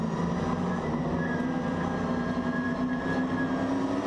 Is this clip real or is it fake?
real